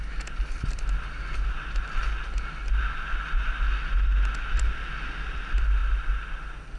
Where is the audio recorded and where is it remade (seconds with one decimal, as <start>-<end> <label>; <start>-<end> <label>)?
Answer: 0.0-6.8 recorded